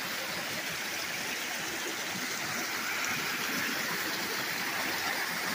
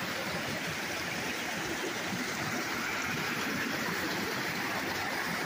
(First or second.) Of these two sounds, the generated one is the second